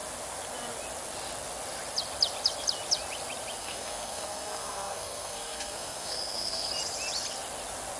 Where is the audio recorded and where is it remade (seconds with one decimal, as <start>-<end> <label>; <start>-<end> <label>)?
0.0-3.6 recorded; 3.6-6.7 remade; 6.7-8.0 recorded